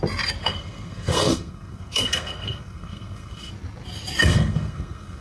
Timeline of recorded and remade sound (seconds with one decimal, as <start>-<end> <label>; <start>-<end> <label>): 0.0-0.4 recorded; 0.4-3.5 remade; 3.5-4.2 recorded; 4.2-5.2 remade